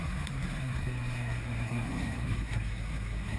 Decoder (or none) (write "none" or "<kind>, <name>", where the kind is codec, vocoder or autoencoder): codec, SNAC